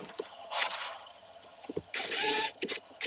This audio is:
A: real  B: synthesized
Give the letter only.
B